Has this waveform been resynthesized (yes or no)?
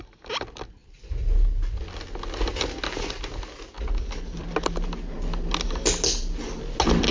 no